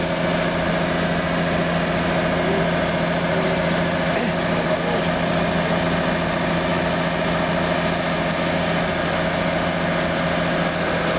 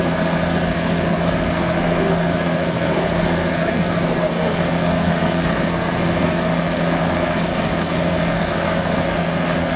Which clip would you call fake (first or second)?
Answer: second